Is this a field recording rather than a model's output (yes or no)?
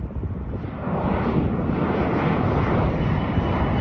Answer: yes